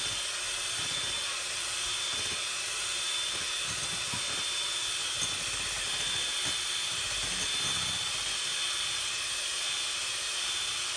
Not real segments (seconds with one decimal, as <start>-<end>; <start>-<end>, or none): none